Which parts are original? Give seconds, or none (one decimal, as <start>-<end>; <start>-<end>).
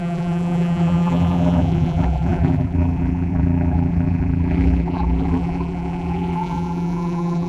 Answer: none